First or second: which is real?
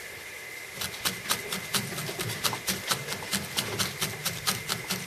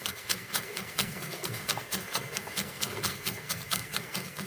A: first